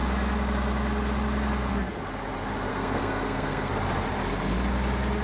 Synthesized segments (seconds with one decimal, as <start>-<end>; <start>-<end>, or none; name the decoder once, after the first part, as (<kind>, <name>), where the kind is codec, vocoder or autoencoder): 2.7-3.7 (codec, SNAC)

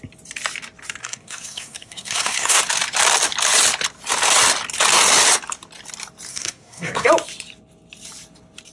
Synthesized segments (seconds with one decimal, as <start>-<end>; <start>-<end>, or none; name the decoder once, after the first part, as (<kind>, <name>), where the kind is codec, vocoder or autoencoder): 1.0-2.6 (codec, SNAC); 6.3-7.1